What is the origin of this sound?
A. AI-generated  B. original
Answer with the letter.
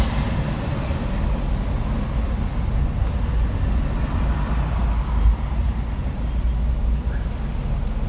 B